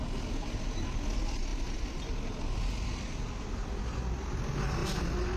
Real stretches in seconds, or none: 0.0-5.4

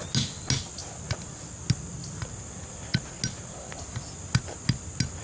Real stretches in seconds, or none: 0.0-5.2

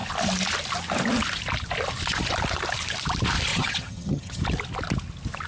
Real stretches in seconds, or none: 0.0-3.5; 4.4-5.5

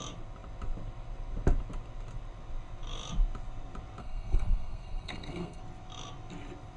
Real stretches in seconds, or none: 0.0-4.0; 5.6-6.8

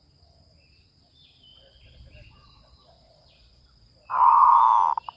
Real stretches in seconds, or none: 0.0-1.5; 4.6-5.2

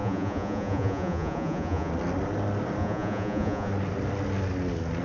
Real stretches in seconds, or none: 1.9-2.8; 3.7-5.0

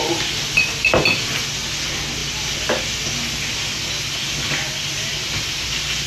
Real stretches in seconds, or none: 0.0-2.2; 2.8-6.1

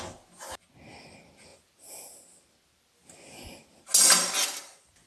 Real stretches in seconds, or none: 0.0-5.1